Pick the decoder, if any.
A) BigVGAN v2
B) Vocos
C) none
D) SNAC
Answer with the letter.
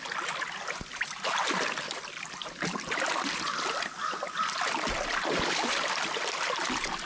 C